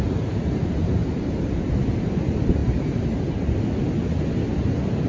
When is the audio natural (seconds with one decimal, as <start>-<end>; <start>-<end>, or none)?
0.0-1.0; 1.7-2.6; 3.6-5.1